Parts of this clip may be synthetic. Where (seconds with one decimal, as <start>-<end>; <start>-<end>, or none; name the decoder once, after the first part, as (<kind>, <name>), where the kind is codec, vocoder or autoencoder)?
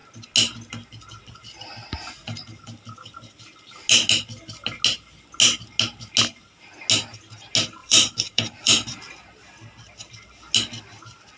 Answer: 7.8-9.0 (vocoder, BigVGAN v2)